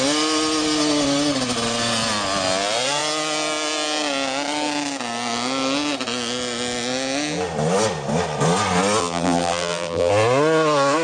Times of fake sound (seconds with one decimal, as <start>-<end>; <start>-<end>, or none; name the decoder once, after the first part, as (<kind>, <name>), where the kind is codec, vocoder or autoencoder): 9.0-10.1 (vocoder, BigVGAN v2)

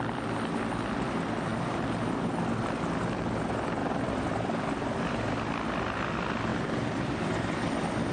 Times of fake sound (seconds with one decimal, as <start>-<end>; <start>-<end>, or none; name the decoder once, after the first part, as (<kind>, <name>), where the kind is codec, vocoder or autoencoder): 3.8-4.5 (vocoder, BigVGAN v2); 6.5-8.1

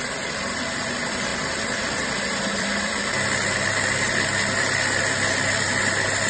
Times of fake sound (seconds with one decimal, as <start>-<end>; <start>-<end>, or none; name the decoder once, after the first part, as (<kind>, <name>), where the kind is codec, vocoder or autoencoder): 0.0-3.0 (vocoder, BigVGAN v2); 5.7-6.3

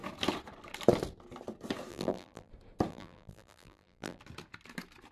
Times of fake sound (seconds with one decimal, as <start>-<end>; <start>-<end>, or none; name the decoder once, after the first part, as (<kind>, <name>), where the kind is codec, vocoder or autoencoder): 1.9-2.5 (vocoder, BigVGAN v2); 2.9-4.2

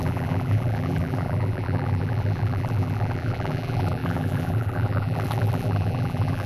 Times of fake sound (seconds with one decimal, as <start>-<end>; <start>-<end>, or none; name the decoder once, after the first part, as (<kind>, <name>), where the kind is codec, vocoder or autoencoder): 0.0-6.5 (vocoder, BigVGAN v2)

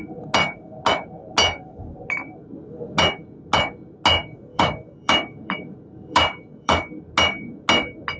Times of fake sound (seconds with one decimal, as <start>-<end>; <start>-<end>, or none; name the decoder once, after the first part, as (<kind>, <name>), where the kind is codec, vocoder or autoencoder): 4.5-7.0 (vocoder, BigVGAN v2)

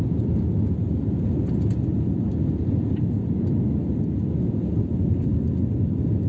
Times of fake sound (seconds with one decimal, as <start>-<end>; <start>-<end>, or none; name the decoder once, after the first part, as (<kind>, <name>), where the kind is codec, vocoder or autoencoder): 1.9-4.7 (vocoder, BigVGAN v2); 5.3-6.3